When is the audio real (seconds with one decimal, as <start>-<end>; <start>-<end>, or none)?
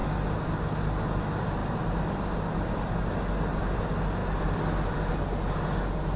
0.0-6.2